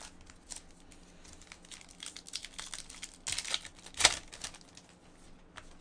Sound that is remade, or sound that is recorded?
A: recorded